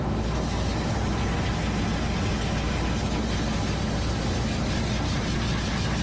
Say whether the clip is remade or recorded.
recorded